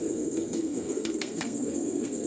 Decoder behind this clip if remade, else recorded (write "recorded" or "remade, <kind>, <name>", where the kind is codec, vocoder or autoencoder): remade, codec, SNAC